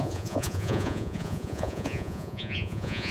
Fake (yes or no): yes